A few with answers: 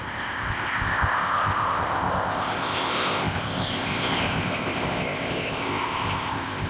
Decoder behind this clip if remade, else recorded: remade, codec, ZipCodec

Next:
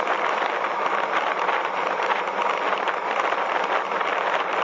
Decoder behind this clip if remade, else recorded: recorded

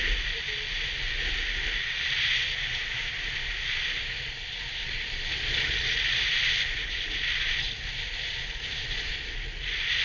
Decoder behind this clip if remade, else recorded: recorded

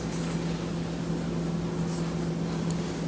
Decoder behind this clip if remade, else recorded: recorded